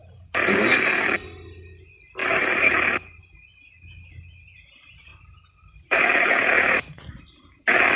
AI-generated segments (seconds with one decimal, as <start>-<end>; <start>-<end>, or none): 0.0-0.7; 2.2-3.2